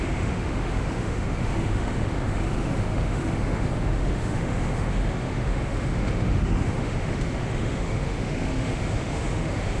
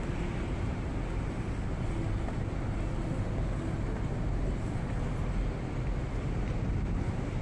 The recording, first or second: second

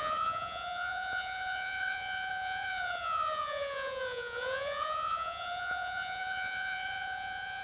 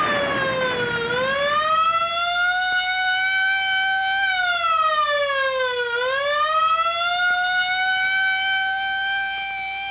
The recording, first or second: second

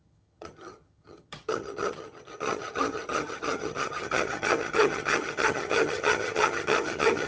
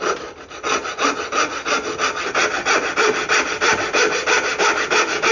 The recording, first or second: second